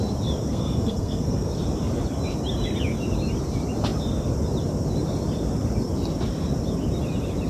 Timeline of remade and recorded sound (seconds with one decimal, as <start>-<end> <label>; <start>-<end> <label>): 0.0-0.5 recorded; 0.5-1.5 remade; 1.5-7.5 recorded